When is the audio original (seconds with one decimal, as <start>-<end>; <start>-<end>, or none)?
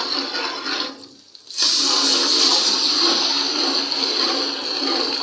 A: 0.0-5.2